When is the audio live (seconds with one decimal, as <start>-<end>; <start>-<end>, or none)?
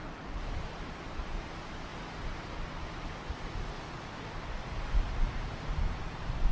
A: 0.0-0.6; 1.9-5.8